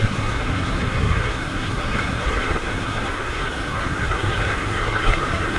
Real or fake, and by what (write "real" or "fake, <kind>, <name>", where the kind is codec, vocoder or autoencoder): fake, codec, SNAC